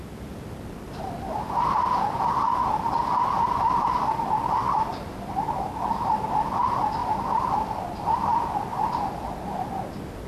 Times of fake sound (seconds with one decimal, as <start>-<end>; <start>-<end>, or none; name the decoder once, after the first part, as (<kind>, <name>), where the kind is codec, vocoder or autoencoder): none

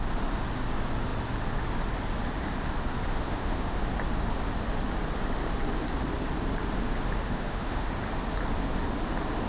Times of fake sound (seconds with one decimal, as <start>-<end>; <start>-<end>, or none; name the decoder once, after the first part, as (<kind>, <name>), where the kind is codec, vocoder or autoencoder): 3.1-3.8 (autoencoder, DAC-VAE); 7.2-7.9

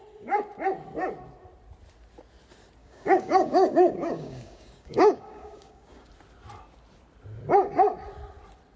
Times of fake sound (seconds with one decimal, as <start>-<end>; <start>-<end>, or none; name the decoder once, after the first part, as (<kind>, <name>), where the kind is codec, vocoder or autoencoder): 2.8-6.1 (codec, DAC)